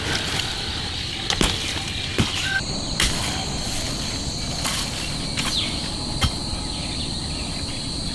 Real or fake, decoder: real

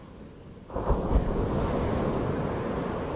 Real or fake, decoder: real